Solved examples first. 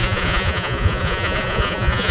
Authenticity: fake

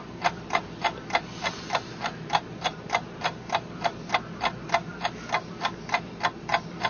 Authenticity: real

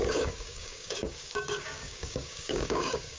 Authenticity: fake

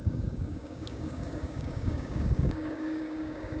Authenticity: fake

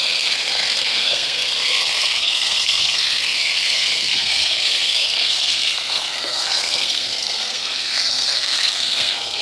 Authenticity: fake